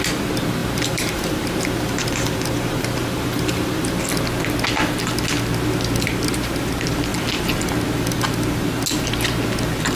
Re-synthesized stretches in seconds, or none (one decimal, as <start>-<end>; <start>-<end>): 0.6-4.0